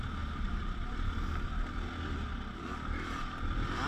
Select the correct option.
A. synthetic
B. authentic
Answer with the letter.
B